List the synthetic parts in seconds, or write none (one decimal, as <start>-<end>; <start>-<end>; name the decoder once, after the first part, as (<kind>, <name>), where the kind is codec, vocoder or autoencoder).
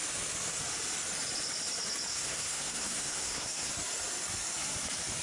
2.1-3.7 (codec, SNAC)